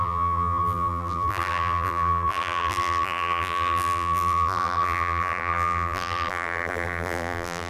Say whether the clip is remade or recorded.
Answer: remade